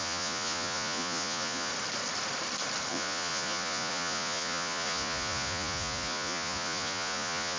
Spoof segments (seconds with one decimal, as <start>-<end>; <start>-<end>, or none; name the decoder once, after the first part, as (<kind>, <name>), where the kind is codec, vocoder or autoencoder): 0.0-1.7 (vocoder, Vocos); 2.9-7.6